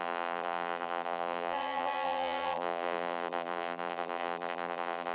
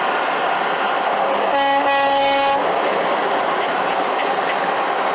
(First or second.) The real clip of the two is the second